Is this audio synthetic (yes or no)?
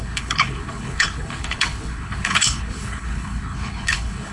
yes